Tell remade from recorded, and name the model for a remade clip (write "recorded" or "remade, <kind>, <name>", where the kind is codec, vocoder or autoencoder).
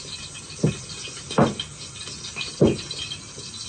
recorded